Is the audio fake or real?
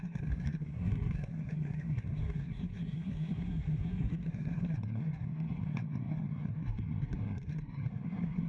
fake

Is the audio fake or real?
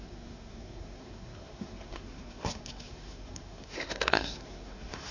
fake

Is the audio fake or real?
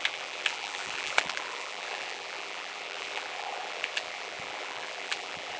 fake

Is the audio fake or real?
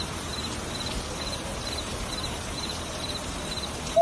fake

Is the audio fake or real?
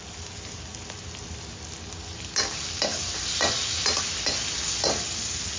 real